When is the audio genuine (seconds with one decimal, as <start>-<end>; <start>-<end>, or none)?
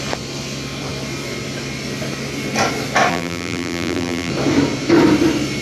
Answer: 0.0-3.1; 4.3-5.6